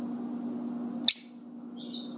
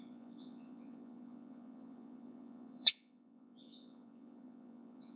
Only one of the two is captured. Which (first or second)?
first